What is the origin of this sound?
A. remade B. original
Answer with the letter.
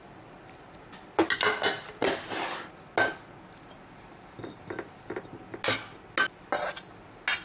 B